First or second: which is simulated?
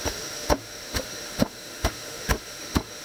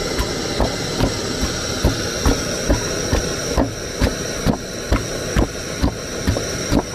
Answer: first